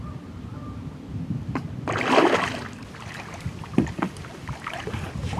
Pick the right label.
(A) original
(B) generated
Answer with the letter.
A